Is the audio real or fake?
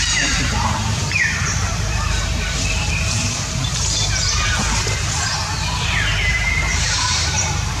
fake